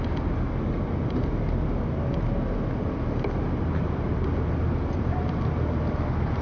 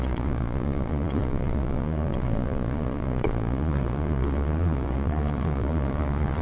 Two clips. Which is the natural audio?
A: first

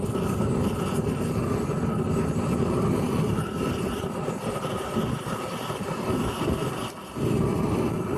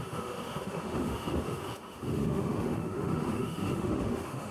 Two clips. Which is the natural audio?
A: first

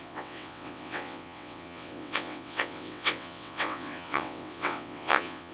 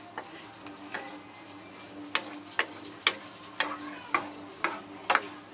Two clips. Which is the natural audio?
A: second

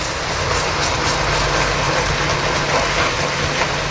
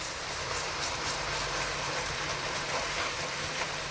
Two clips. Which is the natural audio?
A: first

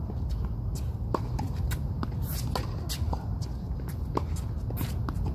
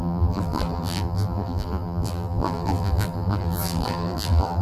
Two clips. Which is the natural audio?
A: first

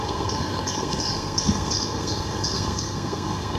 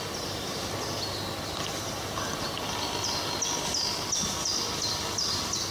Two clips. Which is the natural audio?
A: second